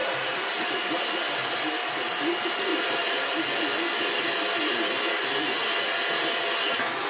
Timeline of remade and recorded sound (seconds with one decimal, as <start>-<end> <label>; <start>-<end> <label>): 0.0-0.6 remade; 0.6-2.7 recorded; 2.7-3.4 remade; 3.4-7.1 recorded